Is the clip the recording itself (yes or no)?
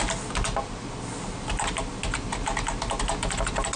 yes